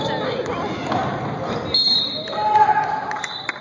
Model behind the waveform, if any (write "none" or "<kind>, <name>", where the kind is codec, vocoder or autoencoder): none